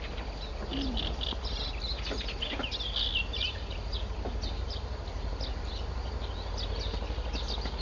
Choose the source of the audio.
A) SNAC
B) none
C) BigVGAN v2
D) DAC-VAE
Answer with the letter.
B